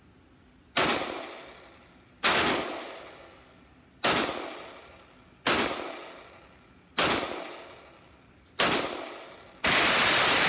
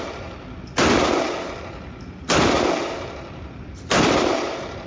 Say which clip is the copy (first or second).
second